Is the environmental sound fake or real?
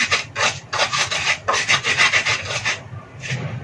real